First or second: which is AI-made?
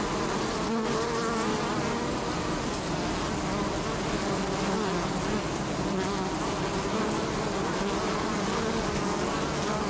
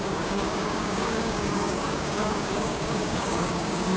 second